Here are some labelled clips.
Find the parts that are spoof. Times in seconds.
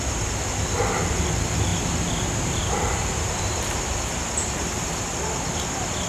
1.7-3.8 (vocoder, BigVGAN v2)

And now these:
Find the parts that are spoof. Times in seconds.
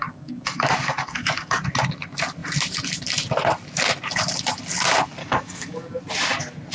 0.0-1.6 (codec, DAC); 5.2-6.0